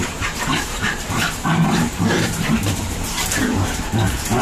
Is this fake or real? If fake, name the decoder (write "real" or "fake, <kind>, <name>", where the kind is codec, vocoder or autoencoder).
fake, vocoder, BigVGAN v2